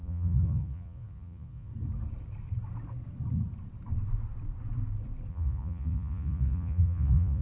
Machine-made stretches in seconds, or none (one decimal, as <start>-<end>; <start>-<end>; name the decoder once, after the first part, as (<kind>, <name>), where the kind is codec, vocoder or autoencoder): 0.0-1.7 (vocoder, Vocos); 5.3-7.4